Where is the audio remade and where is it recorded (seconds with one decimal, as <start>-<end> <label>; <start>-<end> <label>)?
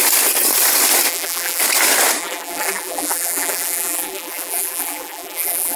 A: 0.0-1.1 recorded; 1.1-1.6 remade; 1.6-2.2 recorded; 2.2-5.8 remade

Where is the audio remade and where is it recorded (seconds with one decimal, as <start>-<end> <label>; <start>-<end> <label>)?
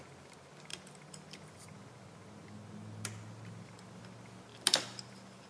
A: 0.0-5.5 recorded